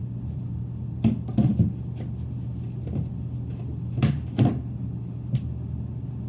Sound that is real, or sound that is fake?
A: real